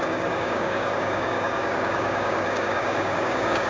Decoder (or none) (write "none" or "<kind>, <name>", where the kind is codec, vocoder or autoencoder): codec, DAC